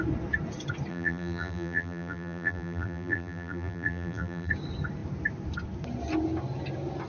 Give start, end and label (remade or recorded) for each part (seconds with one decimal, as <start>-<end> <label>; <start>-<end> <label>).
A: 0.0-0.9 recorded; 0.9-4.5 remade; 4.5-7.1 recorded